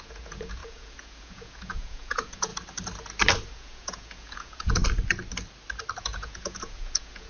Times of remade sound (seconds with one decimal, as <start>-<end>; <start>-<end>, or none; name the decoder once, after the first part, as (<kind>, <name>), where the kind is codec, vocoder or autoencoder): 0.0-2.5 (vocoder, Vocos); 3.5-4.8; 6.0-7.3